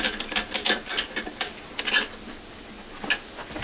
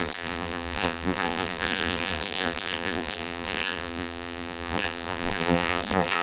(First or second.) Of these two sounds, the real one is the first